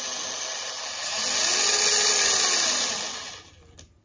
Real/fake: real